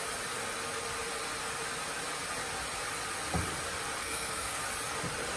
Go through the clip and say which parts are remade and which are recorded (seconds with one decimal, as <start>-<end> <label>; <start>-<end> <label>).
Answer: 0.0-4.0 recorded; 4.0-4.6 remade; 4.6-5.4 recorded

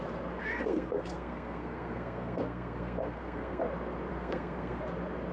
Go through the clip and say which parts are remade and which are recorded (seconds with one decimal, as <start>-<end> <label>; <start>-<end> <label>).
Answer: 0.0-0.4 recorded; 0.4-3.6 remade; 3.6-4.1 recorded; 4.1-4.8 remade; 4.8-5.3 recorded

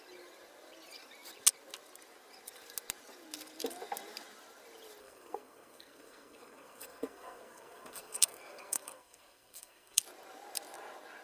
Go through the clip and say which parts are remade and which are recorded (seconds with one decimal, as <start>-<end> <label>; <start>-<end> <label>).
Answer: 0.0-5.0 recorded; 5.0-10.0 remade; 10.0-11.2 recorded

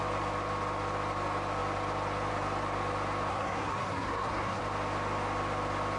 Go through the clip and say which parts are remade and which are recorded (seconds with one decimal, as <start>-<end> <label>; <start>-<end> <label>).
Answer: 0.0-3.3 recorded; 3.3-4.6 remade; 4.6-6.0 recorded